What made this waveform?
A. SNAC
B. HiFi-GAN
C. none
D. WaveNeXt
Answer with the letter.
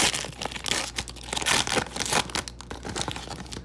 C